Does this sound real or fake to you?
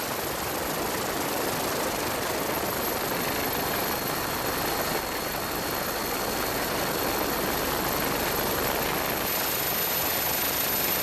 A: real